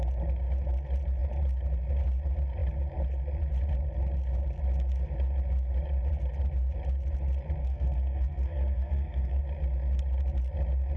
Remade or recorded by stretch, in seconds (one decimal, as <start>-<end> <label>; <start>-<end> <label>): 0.0-7.6 recorded; 7.6-9.4 remade; 9.4-11.0 recorded